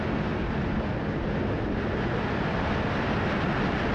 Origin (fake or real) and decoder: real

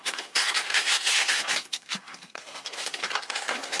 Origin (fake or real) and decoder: fake, codec, SNAC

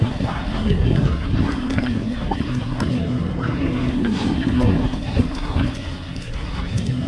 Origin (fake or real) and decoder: fake, codec, SNAC